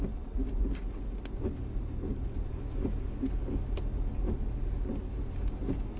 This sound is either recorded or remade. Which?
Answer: recorded